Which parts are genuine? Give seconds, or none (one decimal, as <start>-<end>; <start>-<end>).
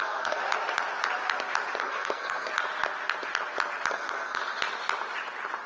0.4-1.8; 2.5-3.9; 4.4-5.7